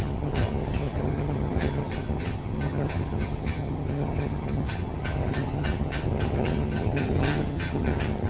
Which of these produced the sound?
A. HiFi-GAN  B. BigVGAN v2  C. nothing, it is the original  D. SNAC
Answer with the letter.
A